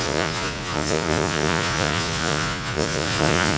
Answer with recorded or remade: remade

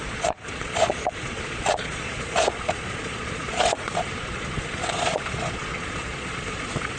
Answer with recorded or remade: remade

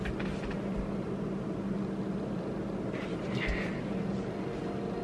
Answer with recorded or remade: recorded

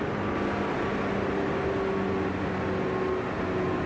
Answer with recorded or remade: recorded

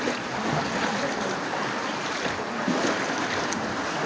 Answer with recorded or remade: recorded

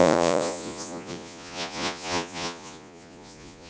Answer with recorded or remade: remade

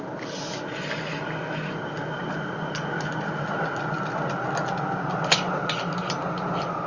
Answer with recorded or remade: recorded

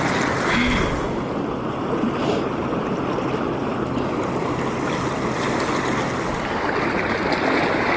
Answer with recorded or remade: recorded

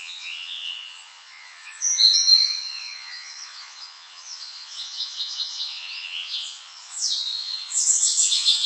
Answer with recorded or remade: remade